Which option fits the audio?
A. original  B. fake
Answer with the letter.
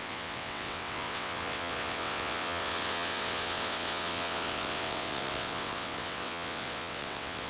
B